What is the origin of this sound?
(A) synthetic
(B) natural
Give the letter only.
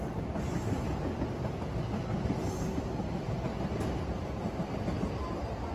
B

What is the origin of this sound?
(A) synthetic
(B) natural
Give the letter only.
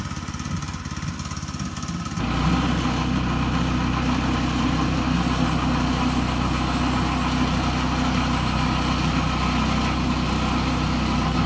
B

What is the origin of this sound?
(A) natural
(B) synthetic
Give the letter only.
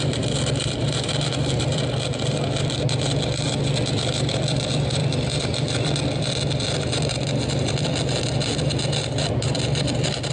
B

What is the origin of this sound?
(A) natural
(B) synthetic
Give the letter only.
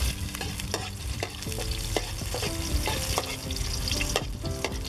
A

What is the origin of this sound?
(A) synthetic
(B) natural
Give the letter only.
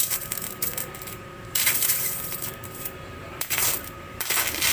A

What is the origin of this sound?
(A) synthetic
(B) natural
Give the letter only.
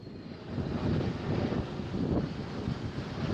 B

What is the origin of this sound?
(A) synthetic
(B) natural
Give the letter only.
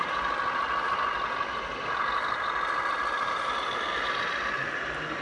B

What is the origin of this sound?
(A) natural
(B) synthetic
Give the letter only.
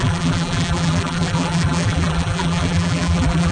B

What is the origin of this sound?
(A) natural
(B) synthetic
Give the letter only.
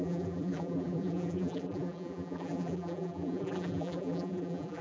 B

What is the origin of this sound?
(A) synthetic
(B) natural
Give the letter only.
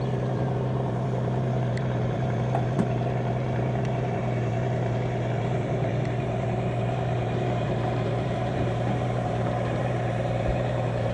A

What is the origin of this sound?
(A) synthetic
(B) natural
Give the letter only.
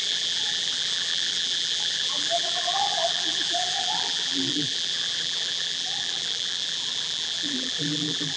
A